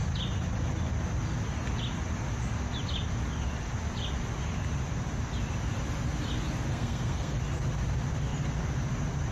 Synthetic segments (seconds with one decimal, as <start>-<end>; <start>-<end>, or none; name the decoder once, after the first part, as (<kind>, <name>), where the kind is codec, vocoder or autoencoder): 6.7-7.4 (codec, SNAC)